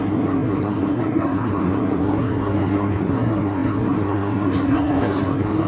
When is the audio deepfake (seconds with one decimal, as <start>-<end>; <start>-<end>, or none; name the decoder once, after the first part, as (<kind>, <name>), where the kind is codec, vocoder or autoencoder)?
0.0-5.7 (codec, SNAC)